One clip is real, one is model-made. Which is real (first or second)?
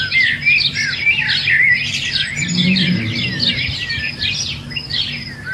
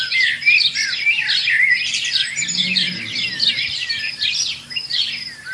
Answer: first